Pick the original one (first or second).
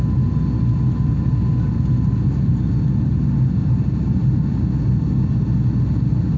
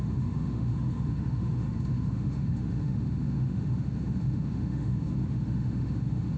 first